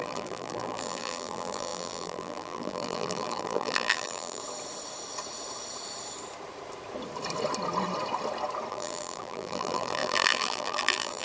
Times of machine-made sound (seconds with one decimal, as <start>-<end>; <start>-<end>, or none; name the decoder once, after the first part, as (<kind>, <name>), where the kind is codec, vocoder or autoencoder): 0.0-4.4 (vocoder, BigVGAN v2); 8.7-11.2

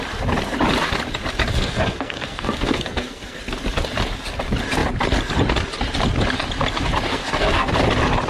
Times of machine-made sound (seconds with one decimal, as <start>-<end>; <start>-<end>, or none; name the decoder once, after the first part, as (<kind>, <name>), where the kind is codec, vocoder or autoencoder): 1.5-3.4 (codec, SNAC); 7.1-7.7

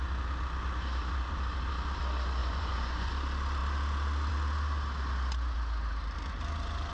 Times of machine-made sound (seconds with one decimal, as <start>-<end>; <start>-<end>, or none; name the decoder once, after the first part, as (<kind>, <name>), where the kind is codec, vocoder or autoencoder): 2.4-3.1 (vocoder, Vocos)

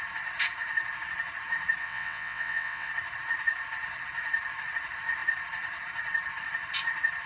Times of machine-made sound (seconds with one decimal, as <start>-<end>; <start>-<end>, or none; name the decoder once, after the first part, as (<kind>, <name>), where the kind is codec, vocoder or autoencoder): 1.8-2.9 (vocoder, WaveNeXt)